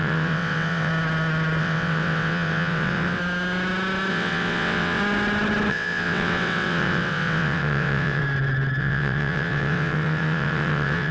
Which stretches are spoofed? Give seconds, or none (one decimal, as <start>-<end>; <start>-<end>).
0.0-0.9; 1.6-3.2; 4.1-5.0; 5.7-8.2; 8.8-11.1